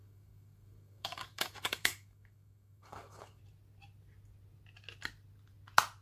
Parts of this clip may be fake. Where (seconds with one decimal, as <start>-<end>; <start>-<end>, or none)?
0.0-3.4